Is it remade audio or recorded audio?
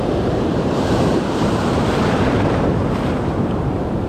remade